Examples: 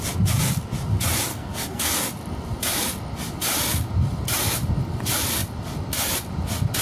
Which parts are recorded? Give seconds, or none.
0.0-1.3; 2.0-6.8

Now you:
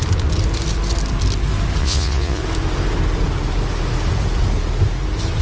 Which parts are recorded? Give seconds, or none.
0.0-1.8; 2.4-5.4